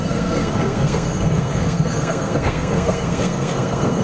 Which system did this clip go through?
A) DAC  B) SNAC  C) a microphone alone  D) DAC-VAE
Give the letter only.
B